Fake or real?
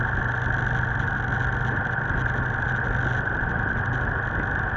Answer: real